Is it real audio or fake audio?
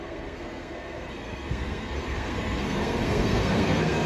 fake